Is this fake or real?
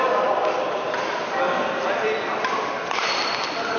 real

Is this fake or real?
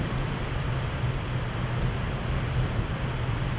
real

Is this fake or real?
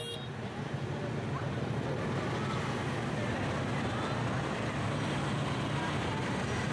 real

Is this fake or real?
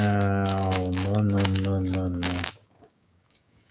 fake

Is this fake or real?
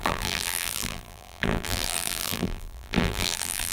fake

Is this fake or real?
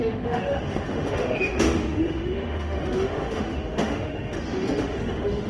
fake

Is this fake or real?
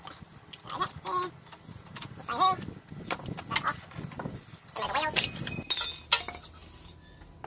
real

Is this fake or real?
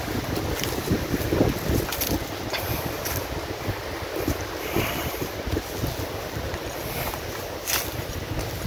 real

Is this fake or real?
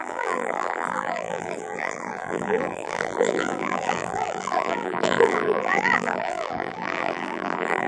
fake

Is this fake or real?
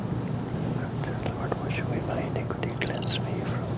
real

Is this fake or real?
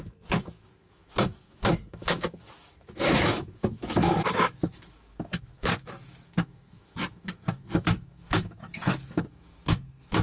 fake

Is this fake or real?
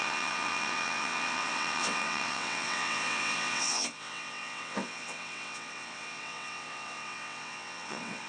fake